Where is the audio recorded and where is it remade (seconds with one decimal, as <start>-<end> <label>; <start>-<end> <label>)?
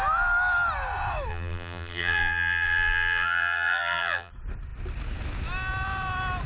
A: 0.0-1.3 recorded; 1.3-4.3 remade; 4.3-6.5 recorded